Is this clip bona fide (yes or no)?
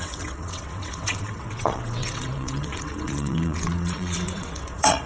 no